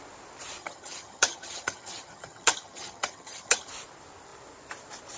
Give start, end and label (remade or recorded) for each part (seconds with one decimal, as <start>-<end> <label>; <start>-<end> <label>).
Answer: 0.0-0.6 recorded; 0.6-3.7 remade; 3.7-5.2 recorded